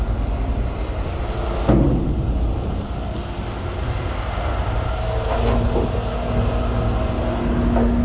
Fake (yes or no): no